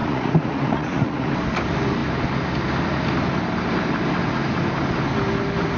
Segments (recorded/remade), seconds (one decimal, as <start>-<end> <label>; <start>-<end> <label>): 0.0-1.3 remade; 1.3-5.8 recorded